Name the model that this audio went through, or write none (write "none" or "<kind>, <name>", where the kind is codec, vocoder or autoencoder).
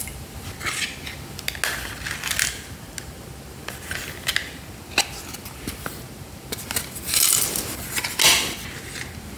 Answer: none